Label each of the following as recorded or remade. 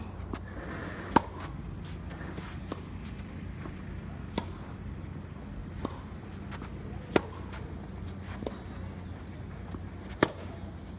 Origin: recorded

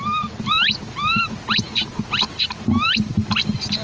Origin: recorded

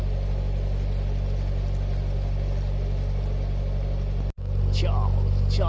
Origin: recorded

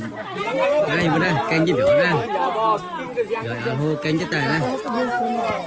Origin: recorded